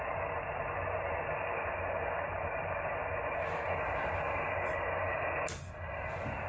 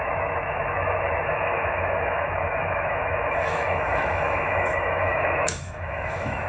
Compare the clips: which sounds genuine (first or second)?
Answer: first